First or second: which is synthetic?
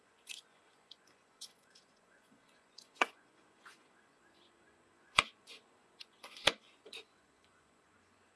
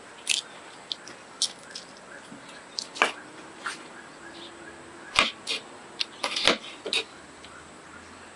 first